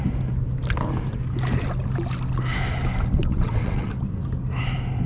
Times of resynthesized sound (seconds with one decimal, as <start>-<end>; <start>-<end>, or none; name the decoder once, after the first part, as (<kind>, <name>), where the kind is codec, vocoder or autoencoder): 3.1-3.9 (vocoder, WaveNeXt)